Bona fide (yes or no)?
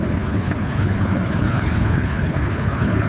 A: no